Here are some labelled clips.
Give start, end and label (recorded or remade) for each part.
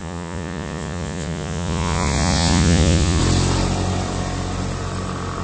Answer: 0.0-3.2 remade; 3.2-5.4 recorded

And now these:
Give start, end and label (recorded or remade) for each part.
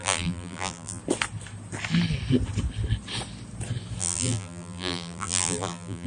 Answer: 0.0-1.0 remade; 1.0-4.0 recorded; 4.0-6.1 remade